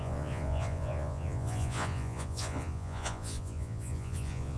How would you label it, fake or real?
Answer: fake